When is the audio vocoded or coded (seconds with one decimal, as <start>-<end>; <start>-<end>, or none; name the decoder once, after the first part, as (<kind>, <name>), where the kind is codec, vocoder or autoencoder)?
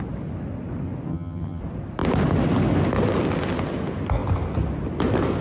1.1-1.6 (vocoder, HiFi-GAN)